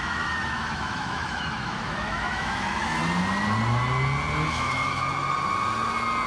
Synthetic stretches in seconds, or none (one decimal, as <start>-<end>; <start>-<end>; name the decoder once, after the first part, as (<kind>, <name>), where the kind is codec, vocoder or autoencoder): 0.0-3.0 (autoencoder, DAC-VAE); 4.5-5.0